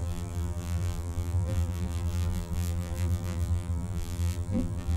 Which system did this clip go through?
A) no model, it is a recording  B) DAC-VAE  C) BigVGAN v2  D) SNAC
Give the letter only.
C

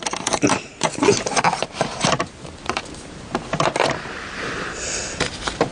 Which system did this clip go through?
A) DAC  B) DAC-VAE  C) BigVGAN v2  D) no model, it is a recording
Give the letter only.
C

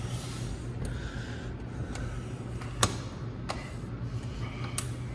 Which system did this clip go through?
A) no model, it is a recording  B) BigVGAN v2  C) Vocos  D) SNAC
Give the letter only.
A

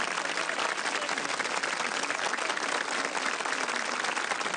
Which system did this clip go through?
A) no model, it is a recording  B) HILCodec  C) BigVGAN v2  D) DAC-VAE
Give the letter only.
A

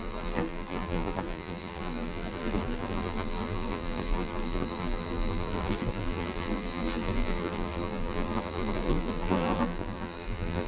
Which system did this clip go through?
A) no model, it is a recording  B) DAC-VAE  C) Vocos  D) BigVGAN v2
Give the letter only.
D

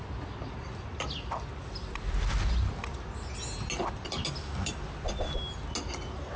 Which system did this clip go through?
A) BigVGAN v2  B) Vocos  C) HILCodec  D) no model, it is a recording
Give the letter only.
D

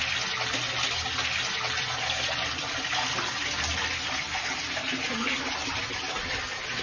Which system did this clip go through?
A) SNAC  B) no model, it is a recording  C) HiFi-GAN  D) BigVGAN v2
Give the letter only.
B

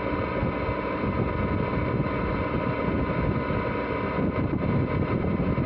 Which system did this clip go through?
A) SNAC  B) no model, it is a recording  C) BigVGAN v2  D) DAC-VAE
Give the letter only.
C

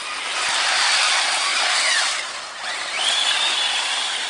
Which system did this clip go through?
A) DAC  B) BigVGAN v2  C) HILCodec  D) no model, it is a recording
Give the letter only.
B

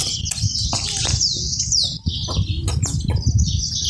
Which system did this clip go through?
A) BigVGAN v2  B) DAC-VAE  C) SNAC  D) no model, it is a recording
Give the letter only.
A